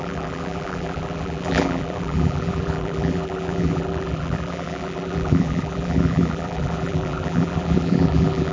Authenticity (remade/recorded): remade